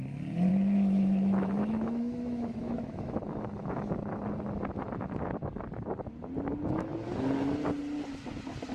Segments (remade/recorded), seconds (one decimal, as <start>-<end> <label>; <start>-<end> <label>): 0.0-0.5 recorded; 0.5-3.9 remade; 3.9-8.7 recorded